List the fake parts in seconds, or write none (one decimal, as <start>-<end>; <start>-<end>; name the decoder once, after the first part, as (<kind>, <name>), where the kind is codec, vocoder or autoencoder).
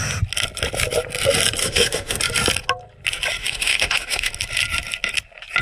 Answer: 1.6-2.2 (autoencoder, DAC-VAE); 3.4-4.3